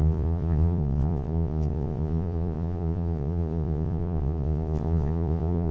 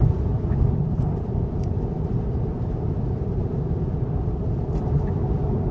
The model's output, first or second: first